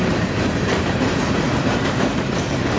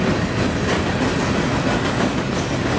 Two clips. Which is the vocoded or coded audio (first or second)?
first